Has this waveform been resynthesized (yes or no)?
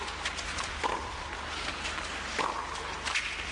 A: no